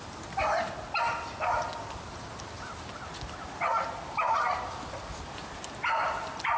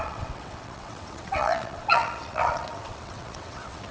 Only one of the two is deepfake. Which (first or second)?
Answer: second